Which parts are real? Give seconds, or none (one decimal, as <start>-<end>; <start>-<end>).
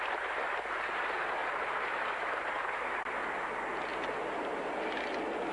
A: 0.0-5.5